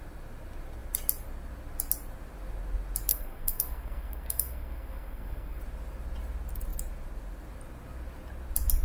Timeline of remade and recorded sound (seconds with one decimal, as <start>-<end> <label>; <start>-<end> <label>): 0.0-3.1 recorded; 3.1-5.6 remade; 5.6-8.8 recorded

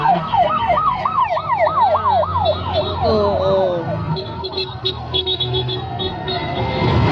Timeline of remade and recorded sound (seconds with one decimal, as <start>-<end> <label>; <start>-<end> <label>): 0.0-1.2 remade; 1.2-3.8 recorded; 3.8-7.1 remade

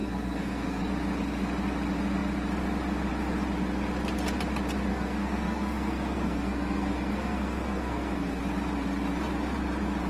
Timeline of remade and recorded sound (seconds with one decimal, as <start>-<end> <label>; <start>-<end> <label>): 0.0-0.8 remade; 0.8-4.9 recorded; 4.9-8.4 remade; 8.4-10.1 recorded

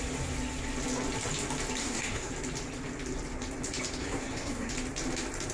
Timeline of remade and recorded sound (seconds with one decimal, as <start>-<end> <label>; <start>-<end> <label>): 0.0-1.8 recorded; 1.8-2.3 remade; 2.3-4.0 recorded; 4.0-4.7 remade; 4.7-5.5 recorded